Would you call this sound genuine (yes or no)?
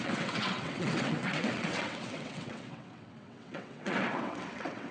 no